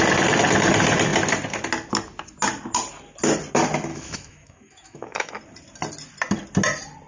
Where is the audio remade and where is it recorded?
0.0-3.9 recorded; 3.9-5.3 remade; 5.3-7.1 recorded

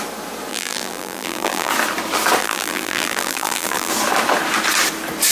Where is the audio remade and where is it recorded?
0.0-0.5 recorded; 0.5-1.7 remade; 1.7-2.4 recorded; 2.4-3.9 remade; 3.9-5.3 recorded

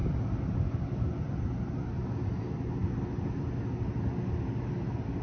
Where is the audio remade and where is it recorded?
0.0-5.2 recorded

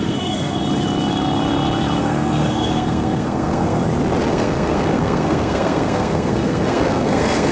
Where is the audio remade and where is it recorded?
0.0-0.6 remade; 0.6-2.0 recorded; 2.0-3.8 remade; 3.8-4.3 recorded; 4.3-7.5 remade

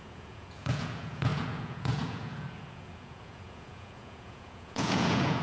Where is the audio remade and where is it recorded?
0.0-5.4 remade

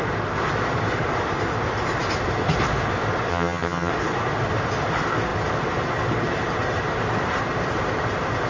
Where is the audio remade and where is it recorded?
0.0-3.3 recorded; 3.3-3.9 remade; 3.9-8.5 recorded